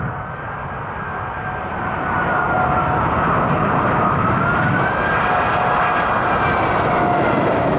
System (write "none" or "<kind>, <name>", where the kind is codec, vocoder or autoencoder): none